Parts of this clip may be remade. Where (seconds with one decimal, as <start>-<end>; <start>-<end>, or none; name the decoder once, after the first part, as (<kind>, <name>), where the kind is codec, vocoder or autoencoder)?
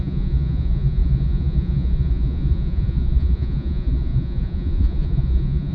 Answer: 0.0-5.7 (vocoder, Vocos)